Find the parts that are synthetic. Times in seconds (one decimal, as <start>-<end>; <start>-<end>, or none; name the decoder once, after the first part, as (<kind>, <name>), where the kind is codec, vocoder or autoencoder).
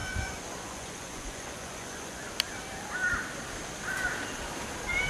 0.0-2.3 (vocoder, Vocos)